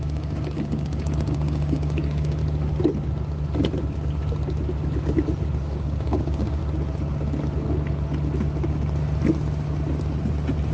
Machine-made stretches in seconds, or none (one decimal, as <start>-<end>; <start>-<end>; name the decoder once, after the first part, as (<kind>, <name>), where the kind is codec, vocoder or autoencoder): 0.0-2.4 (codec, DAC); 5.6-6.6